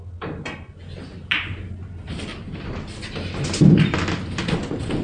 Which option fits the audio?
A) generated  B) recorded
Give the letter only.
B